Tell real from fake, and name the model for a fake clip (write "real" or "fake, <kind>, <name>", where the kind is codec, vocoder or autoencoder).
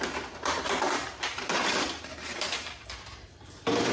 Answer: fake, vocoder, BigVGAN v2